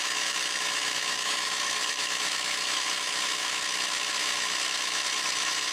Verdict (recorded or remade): remade